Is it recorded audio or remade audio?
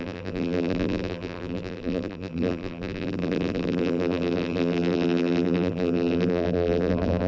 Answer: remade